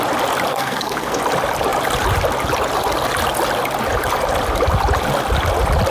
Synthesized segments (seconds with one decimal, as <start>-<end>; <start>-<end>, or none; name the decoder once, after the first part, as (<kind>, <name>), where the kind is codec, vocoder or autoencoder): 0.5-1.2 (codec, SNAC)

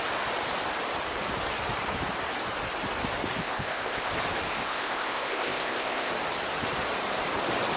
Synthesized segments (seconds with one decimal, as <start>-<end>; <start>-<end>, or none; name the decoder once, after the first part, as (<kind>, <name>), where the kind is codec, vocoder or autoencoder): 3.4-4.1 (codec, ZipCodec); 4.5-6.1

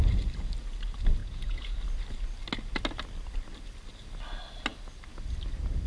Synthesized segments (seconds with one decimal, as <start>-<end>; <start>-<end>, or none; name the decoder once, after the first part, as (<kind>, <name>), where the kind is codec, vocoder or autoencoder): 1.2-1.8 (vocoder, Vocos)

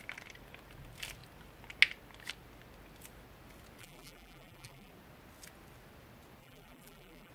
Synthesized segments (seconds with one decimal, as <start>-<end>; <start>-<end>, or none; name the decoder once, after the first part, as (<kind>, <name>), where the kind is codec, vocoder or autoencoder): 3.8-4.9 (vocoder, BigVGAN v2); 6.4-7.3

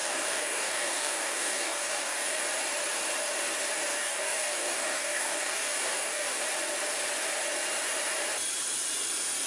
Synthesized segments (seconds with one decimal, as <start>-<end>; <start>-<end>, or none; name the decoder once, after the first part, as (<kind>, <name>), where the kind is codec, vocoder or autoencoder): 0.0-2.4 (codec, DAC); 3.9-6.4